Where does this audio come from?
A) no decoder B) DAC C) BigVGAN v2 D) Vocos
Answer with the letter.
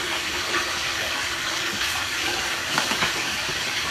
B